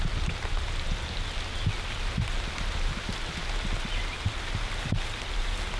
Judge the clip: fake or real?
real